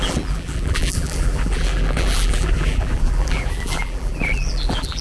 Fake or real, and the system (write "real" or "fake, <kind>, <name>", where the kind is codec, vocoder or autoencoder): fake, vocoder, BigVGAN v2